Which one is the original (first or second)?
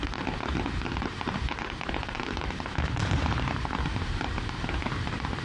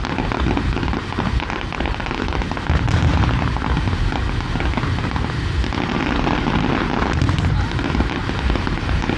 second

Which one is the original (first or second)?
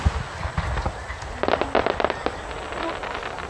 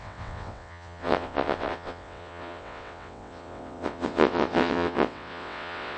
first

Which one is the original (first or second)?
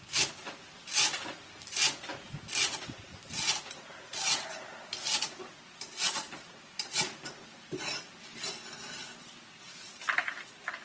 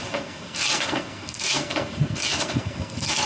first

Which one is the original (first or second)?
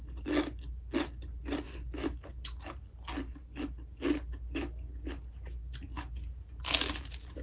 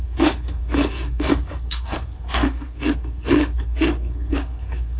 first